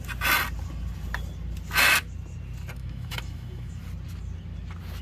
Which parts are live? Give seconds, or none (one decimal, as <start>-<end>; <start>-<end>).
0.0-2.8; 3.8-5.0